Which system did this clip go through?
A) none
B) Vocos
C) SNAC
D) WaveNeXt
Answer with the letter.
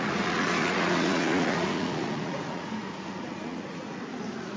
B